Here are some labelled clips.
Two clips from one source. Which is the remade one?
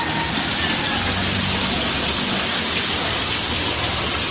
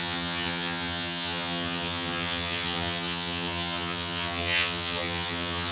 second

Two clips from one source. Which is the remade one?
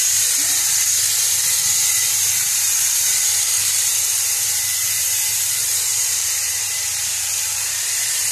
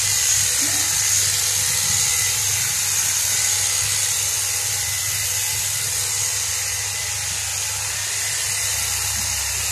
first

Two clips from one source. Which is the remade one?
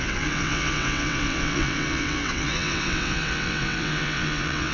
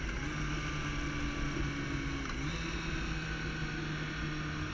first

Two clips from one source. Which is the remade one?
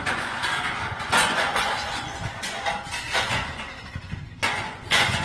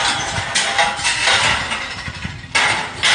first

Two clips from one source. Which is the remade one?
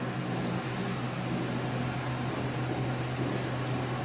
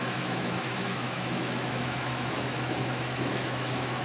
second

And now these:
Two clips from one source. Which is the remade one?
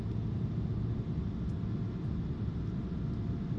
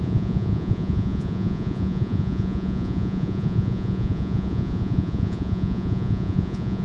second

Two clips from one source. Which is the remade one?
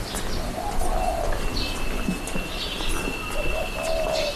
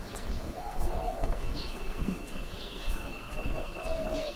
second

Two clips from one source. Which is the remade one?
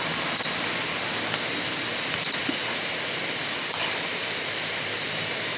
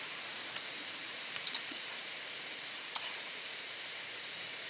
second